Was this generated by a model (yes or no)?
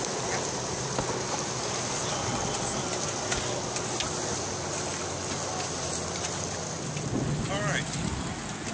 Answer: no